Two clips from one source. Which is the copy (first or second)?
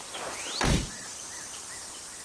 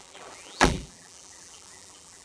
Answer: second